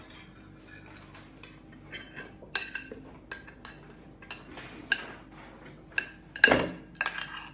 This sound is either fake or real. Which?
real